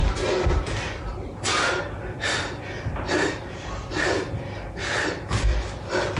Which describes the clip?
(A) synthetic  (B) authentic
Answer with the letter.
B